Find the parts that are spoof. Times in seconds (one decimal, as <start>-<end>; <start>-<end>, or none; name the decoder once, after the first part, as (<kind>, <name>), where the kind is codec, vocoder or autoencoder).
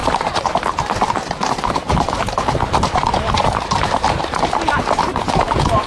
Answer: 0.0-0.8 (vocoder, BigVGAN v2); 1.8-4.2